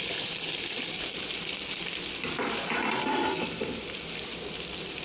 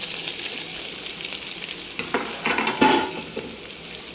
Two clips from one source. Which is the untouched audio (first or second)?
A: second